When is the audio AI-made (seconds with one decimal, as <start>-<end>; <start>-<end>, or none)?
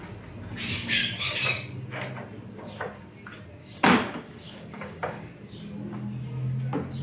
0.7-1.5; 3.6-5.3